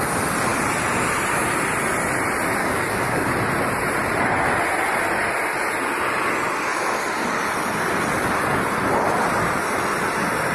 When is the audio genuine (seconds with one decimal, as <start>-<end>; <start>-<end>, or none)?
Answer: 0.0-2.6; 3.3-10.5